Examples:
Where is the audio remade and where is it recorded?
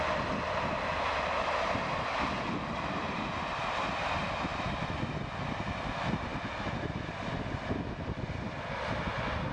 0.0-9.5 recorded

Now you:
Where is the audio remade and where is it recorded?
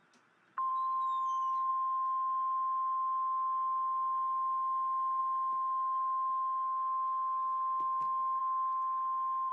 0.0-9.5 recorded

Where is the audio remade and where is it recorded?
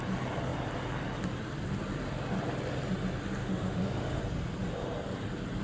0.0-3.4 recorded; 3.4-4.2 remade; 4.2-5.6 recorded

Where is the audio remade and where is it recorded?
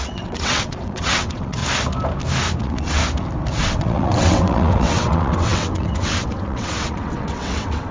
0.0-1.6 remade; 1.6-2.6 recorded; 2.6-3.0 remade; 3.0-3.6 recorded; 3.6-7.9 remade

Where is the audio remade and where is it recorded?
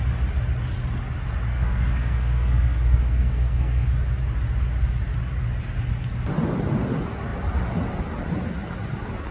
0.0-1.5 recorded; 1.5-3.9 remade; 3.9-9.3 recorded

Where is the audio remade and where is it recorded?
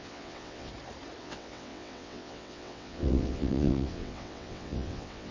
0.0-0.7 remade; 0.7-1.2 recorded; 1.2-5.3 remade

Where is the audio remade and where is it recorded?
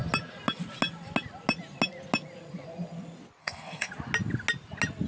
0.0-3.4 recorded; 3.4-3.9 remade; 3.9-5.1 recorded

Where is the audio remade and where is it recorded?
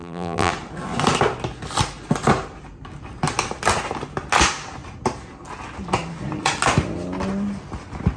0.0-0.5 remade; 0.5-8.2 recorded